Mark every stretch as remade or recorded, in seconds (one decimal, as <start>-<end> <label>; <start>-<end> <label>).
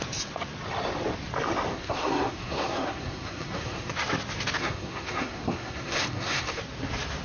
0.0-1.7 recorded; 1.7-3.9 remade; 3.9-4.6 recorded; 4.6-6.6 remade; 6.6-7.2 recorded